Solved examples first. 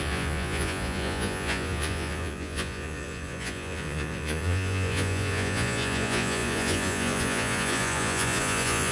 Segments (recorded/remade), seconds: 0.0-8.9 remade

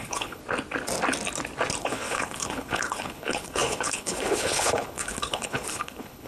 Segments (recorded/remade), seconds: 0.0-0.4 remade; 0.4-1.8 recorded; 1.8-6.3 remade

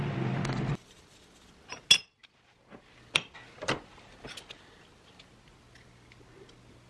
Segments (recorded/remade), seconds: 0.0-6.9 recorded

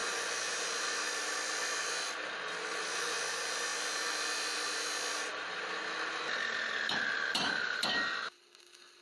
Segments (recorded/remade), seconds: 0.0-9.0 recorded